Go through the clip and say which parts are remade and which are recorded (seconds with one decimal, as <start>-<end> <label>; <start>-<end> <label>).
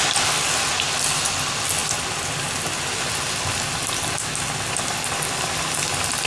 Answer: 0.0-6.3 recorded